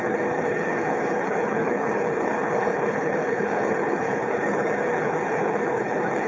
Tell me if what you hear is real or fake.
fake